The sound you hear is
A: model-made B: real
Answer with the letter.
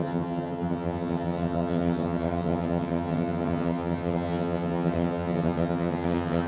A